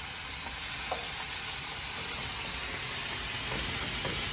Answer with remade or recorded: recorded